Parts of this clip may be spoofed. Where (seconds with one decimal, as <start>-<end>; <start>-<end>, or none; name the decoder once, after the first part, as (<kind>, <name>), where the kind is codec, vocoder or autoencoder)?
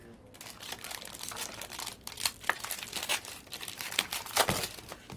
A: 3.1-4.1 (vocoder, BigVGAN v2)